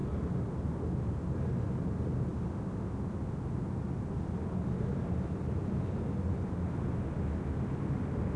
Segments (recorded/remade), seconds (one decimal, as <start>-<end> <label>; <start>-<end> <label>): 0.0-8.4 recorded

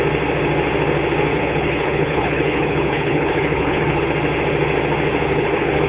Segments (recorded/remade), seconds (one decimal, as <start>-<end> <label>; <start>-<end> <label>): 0.0-1.3 recorded; 1.3-4.0 remade; 4.0-5.3 recorded; 5.3-5.9 remade

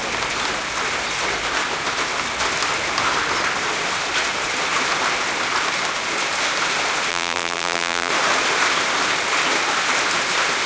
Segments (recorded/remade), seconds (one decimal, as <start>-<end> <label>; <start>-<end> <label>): 0.0-7.1 recorded; 7.1-8.1 remade; 8.1-10.7 recorded

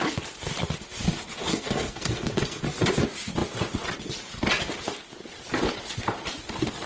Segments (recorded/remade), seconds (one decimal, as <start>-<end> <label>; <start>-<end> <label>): 0.0-1.5 recorded; 1.5-2.6 remade; 2.6-6.9 recorded

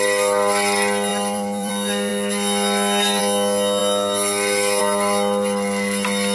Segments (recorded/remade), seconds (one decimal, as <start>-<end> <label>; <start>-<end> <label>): 0.0-1.1 recorded; 1.1-1.7 remade; 1.7-6.3 recorded

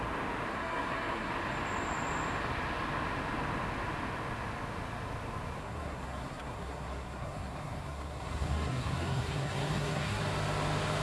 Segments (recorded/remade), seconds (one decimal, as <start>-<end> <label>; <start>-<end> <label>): 0.0-0.5 recorded; 0.5-1.3 remade; 1.3-5.6 recorded; 5.6-10.2 remade; 10.2-11.0 recorded

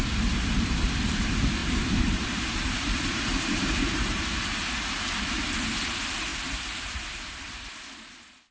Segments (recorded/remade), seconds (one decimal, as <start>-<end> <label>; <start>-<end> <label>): 0.0-1.6 recorded; 1.6-4.2 remade; 4.2-6.3 recorded; 6.3-7.0 remade; 7.0-8.5 recorded